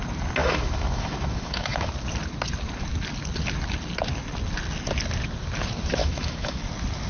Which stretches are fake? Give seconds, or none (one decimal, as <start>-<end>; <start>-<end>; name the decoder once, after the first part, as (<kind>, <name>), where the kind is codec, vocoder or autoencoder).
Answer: 0.4-1.9 (autoencoder, DAC-VAE); 6.0-6.6